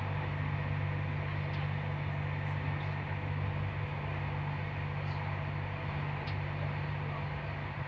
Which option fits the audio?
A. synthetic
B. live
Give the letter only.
B